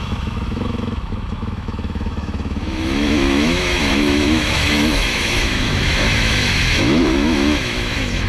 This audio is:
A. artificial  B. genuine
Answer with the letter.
A